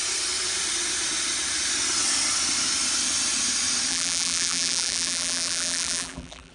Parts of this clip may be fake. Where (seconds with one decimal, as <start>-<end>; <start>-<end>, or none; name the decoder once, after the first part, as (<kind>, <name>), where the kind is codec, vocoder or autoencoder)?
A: 3.9-6.5 (vocoder, BigVGAN v2)